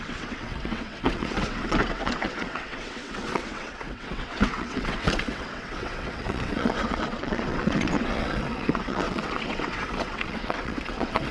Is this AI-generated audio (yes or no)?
yes